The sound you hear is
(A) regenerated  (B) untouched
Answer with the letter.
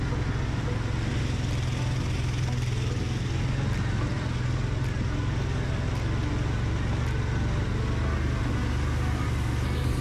B